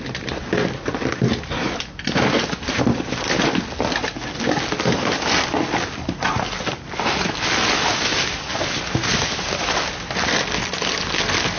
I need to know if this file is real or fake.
real